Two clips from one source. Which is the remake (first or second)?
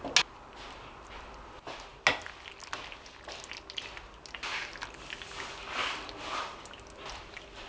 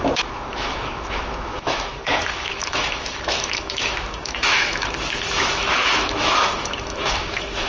second